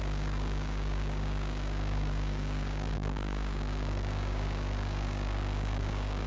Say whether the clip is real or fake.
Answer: fake